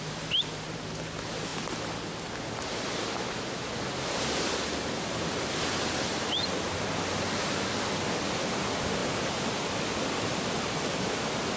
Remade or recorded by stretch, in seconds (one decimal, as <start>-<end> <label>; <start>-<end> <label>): 0.0-11.6 recorded